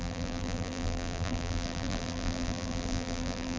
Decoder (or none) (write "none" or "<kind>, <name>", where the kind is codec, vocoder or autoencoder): vocoder, BigVGAN v2